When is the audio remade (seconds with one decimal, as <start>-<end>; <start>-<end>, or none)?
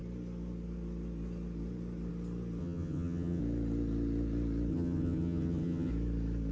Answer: 2.6-3.4; 4.7-5.9